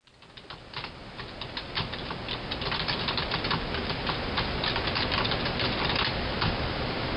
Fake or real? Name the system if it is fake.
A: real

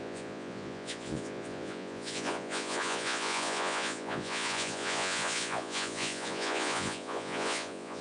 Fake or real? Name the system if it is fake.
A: fake, vocoder, Vocos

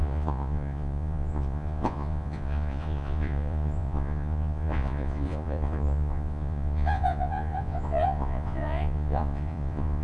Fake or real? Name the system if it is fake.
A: fake, vocoder, Vocos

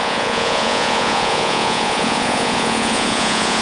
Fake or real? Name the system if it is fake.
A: fake, vocoder, Vocos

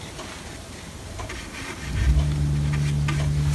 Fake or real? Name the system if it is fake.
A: real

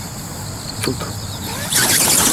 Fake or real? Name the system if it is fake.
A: real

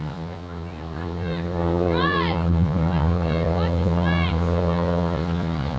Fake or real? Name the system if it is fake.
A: fake, vocoder, Vocos